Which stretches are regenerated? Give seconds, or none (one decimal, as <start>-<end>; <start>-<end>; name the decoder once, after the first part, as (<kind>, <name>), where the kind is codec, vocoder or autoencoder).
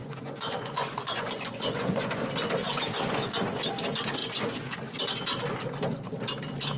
0.0-2.2 (vocoder, Vocos); 2.6-3.3; 4.2-4.7